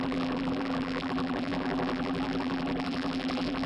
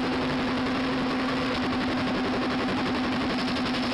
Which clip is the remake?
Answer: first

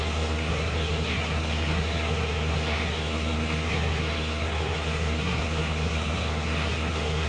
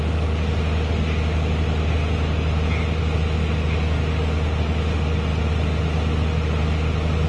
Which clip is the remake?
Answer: first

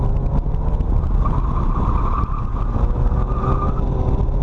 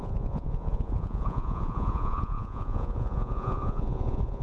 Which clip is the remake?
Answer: second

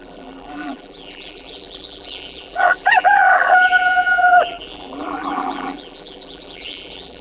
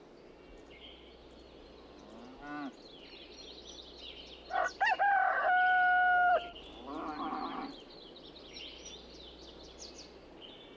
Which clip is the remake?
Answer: first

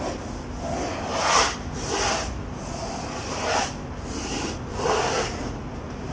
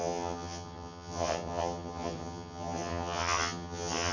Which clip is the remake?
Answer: second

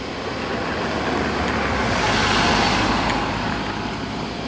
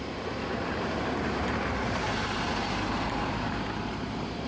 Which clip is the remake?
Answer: second